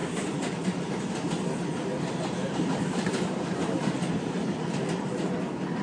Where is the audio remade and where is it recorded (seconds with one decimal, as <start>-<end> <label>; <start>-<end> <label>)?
0.0-1.0 remade; 1.0-1.9 recorded; 1.9-4.6 remade; 4.6-5.8 recorded

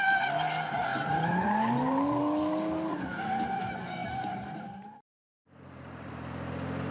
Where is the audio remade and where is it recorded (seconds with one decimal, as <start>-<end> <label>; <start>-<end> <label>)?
0.0-0.9 recorded; 0.9-2.2 remade; 2.2-4.0 recorded; 4.0-6.1 remade; 6.1-6.9 recorded